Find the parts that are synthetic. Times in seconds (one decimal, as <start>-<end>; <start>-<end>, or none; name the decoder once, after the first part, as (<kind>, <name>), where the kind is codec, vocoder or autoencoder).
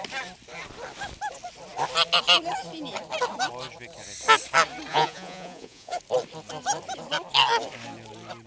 4.9-6.0 (vocoder, Vocos)